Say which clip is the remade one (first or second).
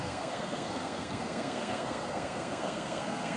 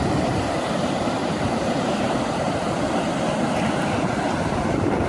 first